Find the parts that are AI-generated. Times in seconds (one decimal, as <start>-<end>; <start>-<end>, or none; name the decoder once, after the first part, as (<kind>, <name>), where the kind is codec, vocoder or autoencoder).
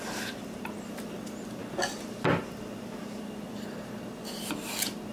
0.0-5.1 (vocoder, BigVGAN v2)